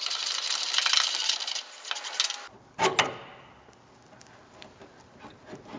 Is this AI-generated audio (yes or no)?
no